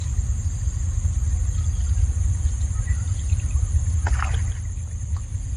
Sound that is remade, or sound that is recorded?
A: recorded